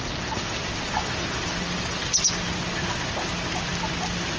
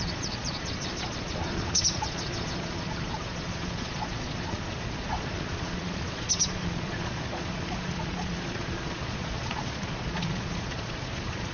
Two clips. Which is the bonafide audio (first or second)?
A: first